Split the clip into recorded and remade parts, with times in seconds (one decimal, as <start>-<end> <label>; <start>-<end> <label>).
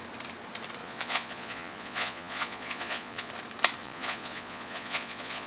0.0-0.8 recorded; 0.8-3.3 remade; 3.3-3.8 recorded; 3.8-5.5 remade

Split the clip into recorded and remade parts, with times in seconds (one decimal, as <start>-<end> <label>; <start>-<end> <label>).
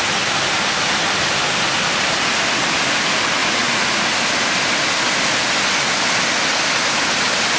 0.0-3.4 recorded; 3.4-4.0 remade; 4.0-7.6 recorded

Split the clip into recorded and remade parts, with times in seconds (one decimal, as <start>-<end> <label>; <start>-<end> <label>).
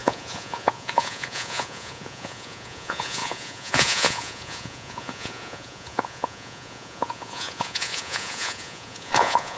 0.0-9.6 remade